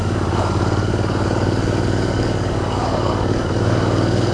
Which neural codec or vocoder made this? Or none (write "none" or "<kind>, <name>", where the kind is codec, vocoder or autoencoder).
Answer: codec, DAC